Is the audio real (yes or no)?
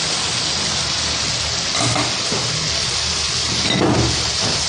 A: yes